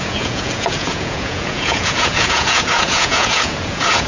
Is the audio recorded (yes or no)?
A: no